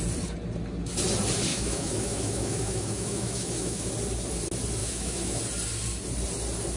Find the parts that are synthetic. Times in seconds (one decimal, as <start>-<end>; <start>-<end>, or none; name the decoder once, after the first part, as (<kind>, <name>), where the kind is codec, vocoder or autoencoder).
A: 1.5-3.9 (autoencoder, DAC-VAE); 4.8-5.4